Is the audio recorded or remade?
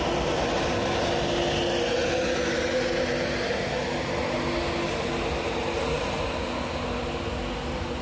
recorded